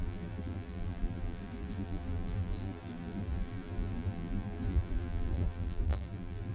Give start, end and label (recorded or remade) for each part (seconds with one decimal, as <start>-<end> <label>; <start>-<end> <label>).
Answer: 0.0-6.5 remade